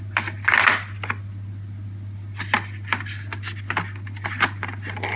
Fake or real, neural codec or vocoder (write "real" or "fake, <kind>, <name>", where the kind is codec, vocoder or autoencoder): real